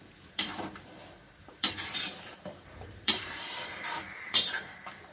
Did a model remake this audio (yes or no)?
yes